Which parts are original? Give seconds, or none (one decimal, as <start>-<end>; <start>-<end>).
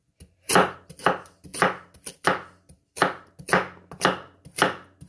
0.0-5.1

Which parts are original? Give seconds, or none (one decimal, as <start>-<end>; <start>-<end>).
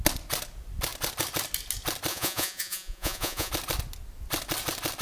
0.0-2.1; 3.5-5.0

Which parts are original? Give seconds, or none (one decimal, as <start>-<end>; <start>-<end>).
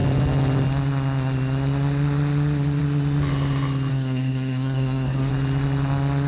0.0-3.9; 5.3-6.3